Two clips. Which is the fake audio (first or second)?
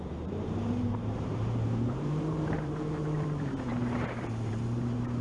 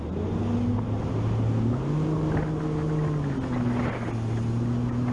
first